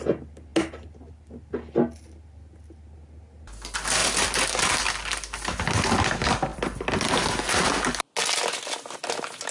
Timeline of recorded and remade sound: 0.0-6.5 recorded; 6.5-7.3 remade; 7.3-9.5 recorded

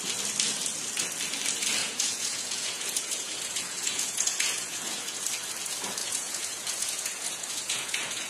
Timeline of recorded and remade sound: 0.0-1.8 recorded; 1.8-5.2 remade; 5.2-6.0 recorded; 6.0-8.3 remade

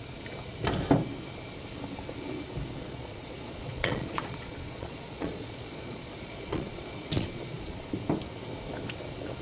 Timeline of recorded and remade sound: 0.0-2.8 recorded; 2.8-7.8 remade; 7.8-9.4 recorded

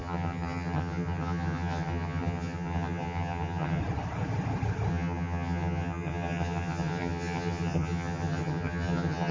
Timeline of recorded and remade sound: 0.0-3.8 remade; 3.8-4.9 recorded; 4.9-9.3 remade

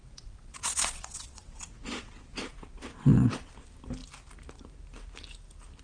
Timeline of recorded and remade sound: 0.0-3.5 remade; 3.5-5.8 recorded

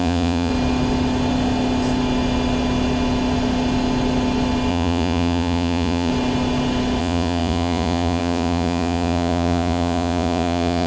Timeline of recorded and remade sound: 0.0-0.5 remade; 0.5-4.7 recorded; 4.7-6.1 remade; 6.1-7.0 recorded; 7.0-10.9 remade